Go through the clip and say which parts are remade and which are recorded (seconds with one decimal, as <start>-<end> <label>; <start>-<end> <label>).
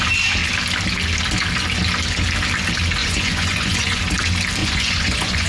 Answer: 0.0-3.0 recorded; 3.0-4.0 remade; 4.0-4.6 recorded; 4.6-5.5 remade